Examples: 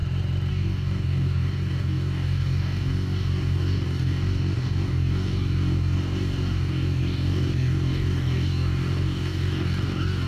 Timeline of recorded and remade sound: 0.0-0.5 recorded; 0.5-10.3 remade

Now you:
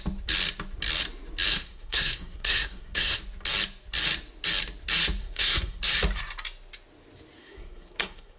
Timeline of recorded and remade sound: 0.0-1.5 recorded; 1.5-3.2 remade; 3.2-5.2 recorded; 5.2-5.8 remade; 5.8-7.4 recorded; 7.4-8.4 remade

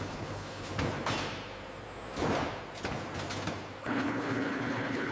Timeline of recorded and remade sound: 0.0-0.7 remade; 0.7-3.8 recorded; 3.8-5.1 remade

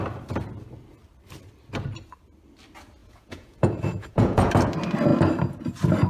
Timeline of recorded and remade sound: 0.0-3.0 recorded; 3.0-4.5 remade; 4.5-6.1 recorded